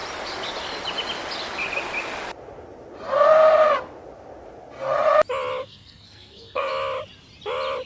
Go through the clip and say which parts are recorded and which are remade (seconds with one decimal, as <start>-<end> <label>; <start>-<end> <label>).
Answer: 0.0-5.6 recorded; 5.6-6.7 remade; 6.7-7.9 recorded